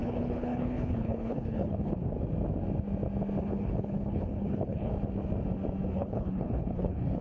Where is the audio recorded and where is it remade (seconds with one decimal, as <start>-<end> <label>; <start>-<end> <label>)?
0.0-1.9 remade; 1.9-3.4 recorded; 3.4-4.9 remade; 4.9-5.9 recorded; 5.9-7.2 remade